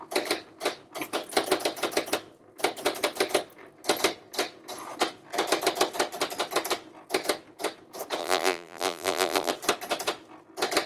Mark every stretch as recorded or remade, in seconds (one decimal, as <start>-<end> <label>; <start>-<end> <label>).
0.0-8.2 recorded; 8.2-9.5 remade; 9.5-10.9 recorded